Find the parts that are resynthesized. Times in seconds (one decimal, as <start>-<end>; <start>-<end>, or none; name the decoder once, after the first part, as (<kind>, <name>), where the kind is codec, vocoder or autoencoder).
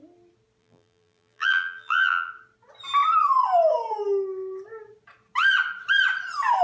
0.6-2.3 (vocoder, BigVGAN v2)